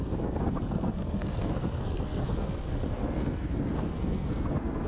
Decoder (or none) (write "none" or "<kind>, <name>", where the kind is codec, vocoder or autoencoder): codec, SNAC